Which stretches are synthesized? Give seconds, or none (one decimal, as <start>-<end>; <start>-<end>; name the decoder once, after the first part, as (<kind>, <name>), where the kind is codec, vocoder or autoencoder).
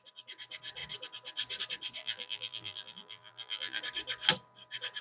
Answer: 2.0-3.8 (vocoder, BigVGAN v2)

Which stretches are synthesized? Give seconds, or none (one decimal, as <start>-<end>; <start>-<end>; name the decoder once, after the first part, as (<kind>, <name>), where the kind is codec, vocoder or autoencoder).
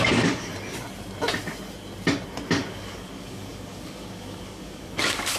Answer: 0.0-0.5 (codec, DAC); 2.7-5.4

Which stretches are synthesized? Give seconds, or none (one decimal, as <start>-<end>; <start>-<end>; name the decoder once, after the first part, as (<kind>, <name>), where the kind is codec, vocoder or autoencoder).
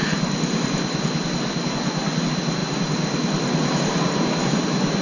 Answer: none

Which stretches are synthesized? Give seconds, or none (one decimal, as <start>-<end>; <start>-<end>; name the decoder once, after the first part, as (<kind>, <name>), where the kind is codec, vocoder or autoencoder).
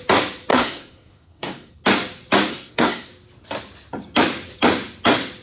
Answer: 0.5-1.7 (codec, SNAC); 2.5-3.1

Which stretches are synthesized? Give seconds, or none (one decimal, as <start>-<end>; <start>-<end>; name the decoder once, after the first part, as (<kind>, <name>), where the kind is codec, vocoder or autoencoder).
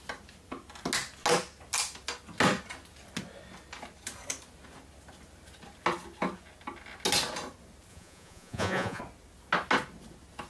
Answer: 7.9-9.0 (vocoder, Vocos)